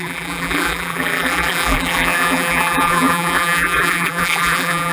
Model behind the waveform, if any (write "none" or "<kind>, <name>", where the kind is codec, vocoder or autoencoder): vocoder, BigVGAN v2